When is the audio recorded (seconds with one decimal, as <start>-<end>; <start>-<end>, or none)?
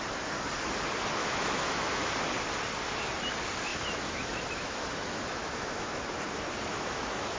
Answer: 0.0-1.2; 2.1-3.7; 6.0-6.7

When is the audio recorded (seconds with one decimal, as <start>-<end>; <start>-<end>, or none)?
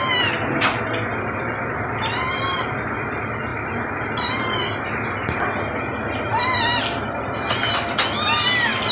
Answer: 0.0-8.9